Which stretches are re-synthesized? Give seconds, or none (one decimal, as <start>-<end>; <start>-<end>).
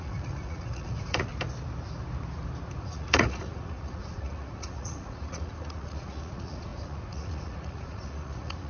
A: 0.0-1.3; 2.8-8.7